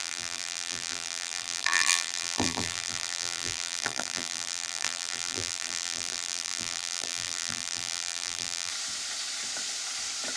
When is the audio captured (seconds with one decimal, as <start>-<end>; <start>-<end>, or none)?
8.7-10.4